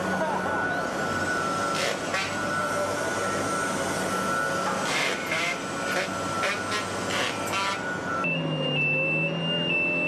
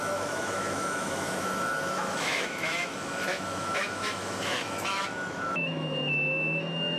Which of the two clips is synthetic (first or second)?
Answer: second